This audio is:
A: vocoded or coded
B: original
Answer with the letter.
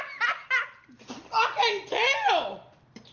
B